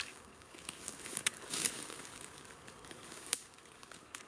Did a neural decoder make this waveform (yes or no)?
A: yes